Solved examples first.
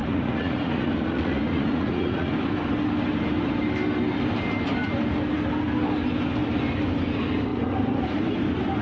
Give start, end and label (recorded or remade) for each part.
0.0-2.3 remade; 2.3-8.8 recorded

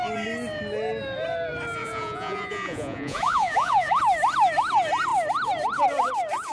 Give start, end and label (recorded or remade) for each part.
0.0-1.8 recorded; 1.8-4.0 remade; 4.0-6.5 recorded

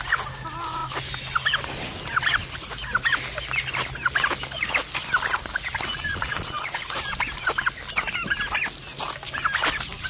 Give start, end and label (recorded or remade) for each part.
0.0-5.9 recorded; 5.9-6.8 remade; 6.8-10.1 recorded

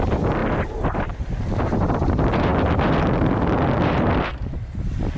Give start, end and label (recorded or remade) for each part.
0.0-5.2 recorded

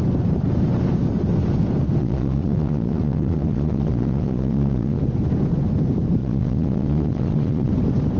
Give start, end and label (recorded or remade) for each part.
0.0-2.0 recorded; 2.0-5.0 remade; 5.0-6.2 recorded; 6.2-7.7 remade; 7.7-8.2 recorded

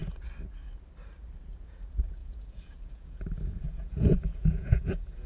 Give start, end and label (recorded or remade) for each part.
0.0-1.4 recorded; 1.4-5.3 remade

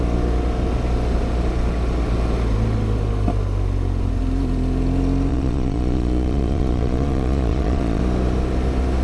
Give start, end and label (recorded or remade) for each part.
0.0-5.3 recorded; 5.3-8.0 remade; 8.0-9.0 recorded

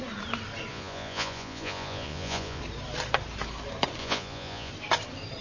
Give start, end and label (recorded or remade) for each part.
0.0-0.7 recorded; 0.7-2.6 remade; 2.6-4.0 recorded; 4.0-4.7 remade; 4.7-5.4 recorded